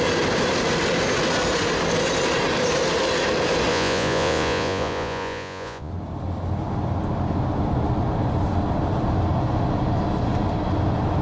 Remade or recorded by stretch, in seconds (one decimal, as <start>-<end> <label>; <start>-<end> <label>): 0.0-3.7 recorded; 3.7-5.9 remade; 5.9-11.2 recorded